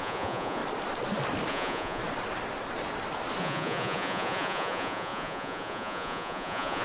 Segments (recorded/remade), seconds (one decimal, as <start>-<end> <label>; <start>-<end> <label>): 0.0-0.6 remade; 0.6-1.5 recorded; 1.5-2.0 remade; 2.0-3.4 recorded; 3.4-6.8 remade